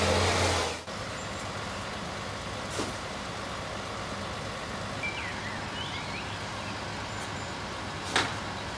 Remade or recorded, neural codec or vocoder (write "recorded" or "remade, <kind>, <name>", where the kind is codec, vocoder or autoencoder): recorded